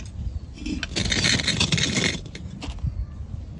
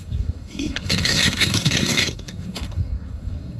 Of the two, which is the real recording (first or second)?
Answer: first